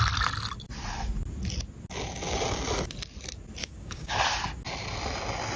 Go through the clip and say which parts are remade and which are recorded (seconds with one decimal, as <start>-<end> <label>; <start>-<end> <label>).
0.0-3.6 recorded; 3.6-4.1 remade; 4.1-5.6 recorded